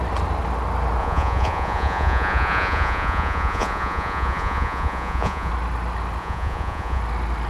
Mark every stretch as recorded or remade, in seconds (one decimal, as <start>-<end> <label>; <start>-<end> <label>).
0.0-1.0 recorded; 1.0-5.5 remade; 5.5-6.2 recorded; 6.2-7.0 remade; 7.0-7.5 recorded